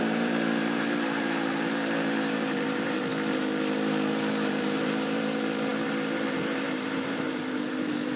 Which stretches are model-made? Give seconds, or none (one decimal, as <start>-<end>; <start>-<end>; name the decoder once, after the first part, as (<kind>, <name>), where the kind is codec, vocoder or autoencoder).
0.0-3.1 (vocoder, BigVGAN v2); 4.5-8.2